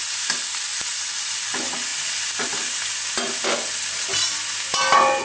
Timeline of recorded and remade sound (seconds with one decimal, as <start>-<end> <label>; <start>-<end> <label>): 0.0-5.2 recorded